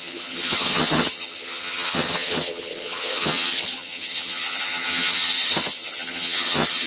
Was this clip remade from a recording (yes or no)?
yes